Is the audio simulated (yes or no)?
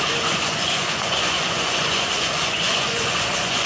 yes